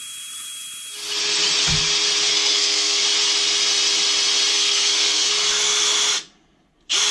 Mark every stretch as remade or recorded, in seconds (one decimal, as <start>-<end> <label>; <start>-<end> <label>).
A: 0.0-2.3 recorded; 2.3-3.0 remade; 3.0-4.5 recorded; 4.5-5.3 remade; 5.3-7.1 recorded